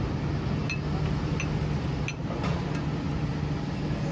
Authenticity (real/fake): real